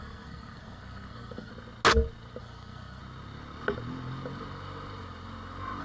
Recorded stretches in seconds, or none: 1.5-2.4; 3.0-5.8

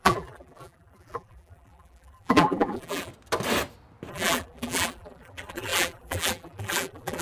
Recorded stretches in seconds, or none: 3.1-4.1

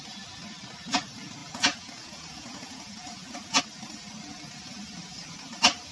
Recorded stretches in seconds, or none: 0.0-1.4; 3.6-5.9

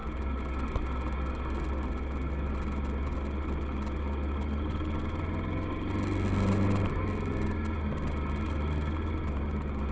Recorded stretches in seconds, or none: 0.0-9.9

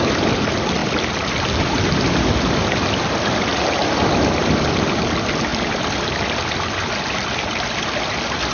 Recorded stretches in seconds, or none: 0.0-8.5

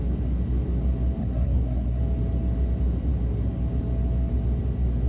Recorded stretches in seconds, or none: 0.0-1.2; 2.0-5.1

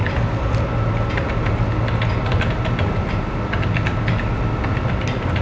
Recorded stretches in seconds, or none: 0.0-5.4

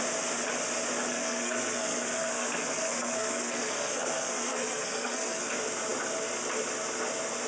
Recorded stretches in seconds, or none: 0.0-1.1; 5.5-7.5